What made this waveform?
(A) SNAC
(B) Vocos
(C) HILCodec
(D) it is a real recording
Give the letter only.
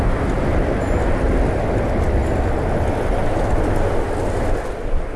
D